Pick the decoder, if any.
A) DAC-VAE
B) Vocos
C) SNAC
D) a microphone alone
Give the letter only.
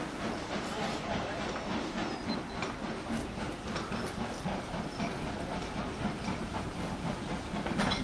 D